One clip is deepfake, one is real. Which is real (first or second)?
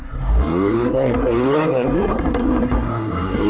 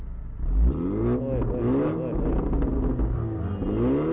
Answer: second